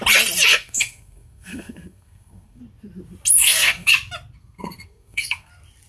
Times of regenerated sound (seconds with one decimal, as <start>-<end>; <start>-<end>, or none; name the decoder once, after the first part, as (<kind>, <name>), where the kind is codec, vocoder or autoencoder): 0.5-2.6 (codec, SNAC); 3.4-3.9; 4.4-5.5